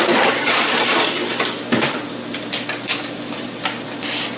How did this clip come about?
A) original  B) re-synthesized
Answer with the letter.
A